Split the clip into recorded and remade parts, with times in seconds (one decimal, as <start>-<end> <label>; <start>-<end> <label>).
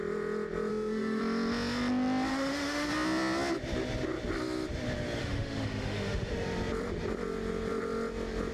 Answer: 0.0-0.7 recorded; 0.7-1.2 remade; 1.2-2.3 recorded; 2.3-2.9 remade; 2.9-5.2 recorded; 5.2-6.3 remade; 6.3-8.5 recorded